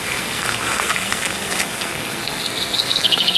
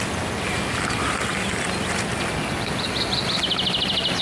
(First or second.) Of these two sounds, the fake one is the first